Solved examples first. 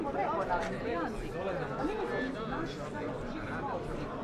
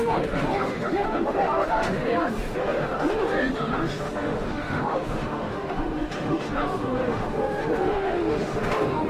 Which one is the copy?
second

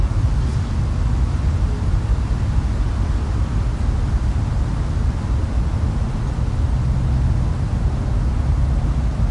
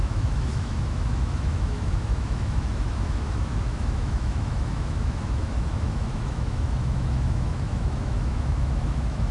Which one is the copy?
second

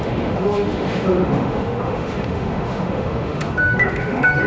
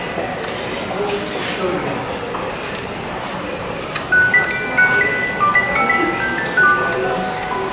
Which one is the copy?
first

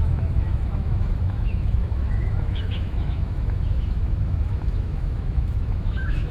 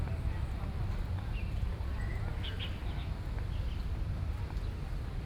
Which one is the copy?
first